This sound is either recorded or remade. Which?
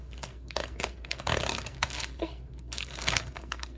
remade